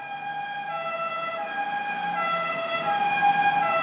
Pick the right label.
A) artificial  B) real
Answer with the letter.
B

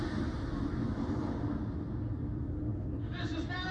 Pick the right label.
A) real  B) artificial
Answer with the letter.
A